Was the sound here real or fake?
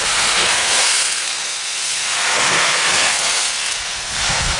fake